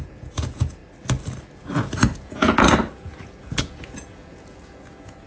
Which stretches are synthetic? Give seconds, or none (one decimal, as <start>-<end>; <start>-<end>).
0.0-0.8; 1.4-5.3